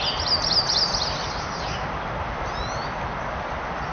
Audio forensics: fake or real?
real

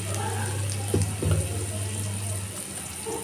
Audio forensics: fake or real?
real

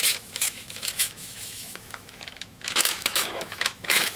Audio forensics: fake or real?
fake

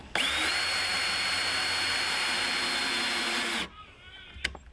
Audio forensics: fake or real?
real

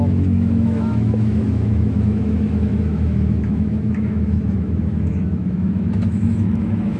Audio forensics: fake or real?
fake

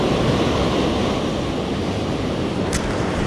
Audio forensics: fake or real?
real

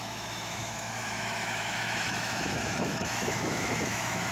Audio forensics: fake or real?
fake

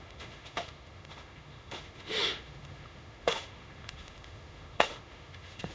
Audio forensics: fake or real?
fake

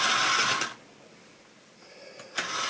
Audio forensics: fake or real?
real